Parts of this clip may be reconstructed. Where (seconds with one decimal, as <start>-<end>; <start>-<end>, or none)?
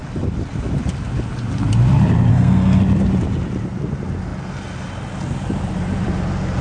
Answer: 2.3-2.8